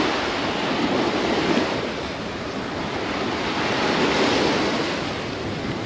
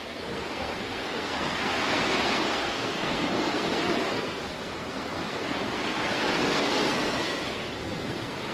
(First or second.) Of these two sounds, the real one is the first